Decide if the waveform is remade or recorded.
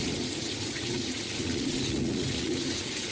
remade